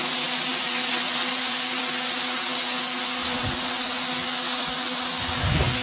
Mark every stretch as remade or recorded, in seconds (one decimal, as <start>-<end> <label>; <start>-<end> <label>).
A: 0.0-0.5 recorded; 0.5-1.8 remade; 1.8-3.2 recorded; 3.2-3.9 remade; 3.9-5.8 recorded